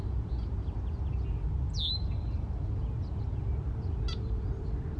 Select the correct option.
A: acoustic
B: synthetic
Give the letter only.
A